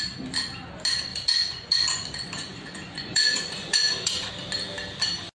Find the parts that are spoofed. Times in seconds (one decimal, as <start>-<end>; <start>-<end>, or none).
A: 1.1-4.3